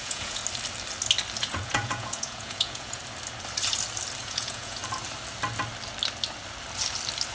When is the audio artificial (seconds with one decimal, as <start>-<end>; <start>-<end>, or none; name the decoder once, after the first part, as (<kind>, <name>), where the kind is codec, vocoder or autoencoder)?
0.0-0.4 (vocoder, Vocos); 1.4-3.0; 4.2-4.8